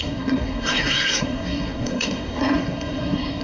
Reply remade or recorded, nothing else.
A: remade